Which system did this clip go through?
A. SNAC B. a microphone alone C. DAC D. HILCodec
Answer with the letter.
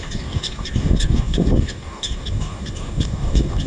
C